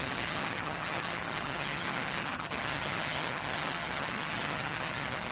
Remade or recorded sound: remade